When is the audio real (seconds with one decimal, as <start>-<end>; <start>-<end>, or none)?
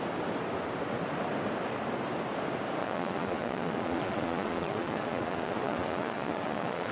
0.0-2.8